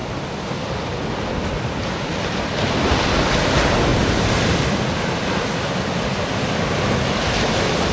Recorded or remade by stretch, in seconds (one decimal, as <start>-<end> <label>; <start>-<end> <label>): 0.0-7.9 recorded